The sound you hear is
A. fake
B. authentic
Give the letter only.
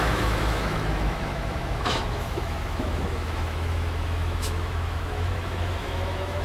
A